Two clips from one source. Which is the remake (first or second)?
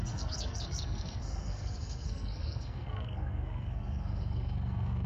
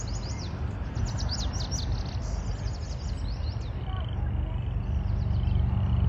first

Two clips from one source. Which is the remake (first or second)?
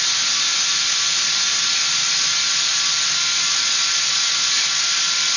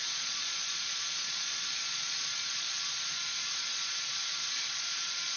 second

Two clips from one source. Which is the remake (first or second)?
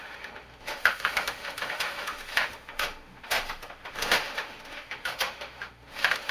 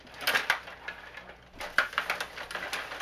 first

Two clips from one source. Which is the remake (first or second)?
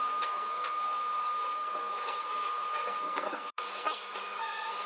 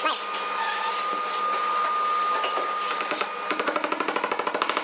first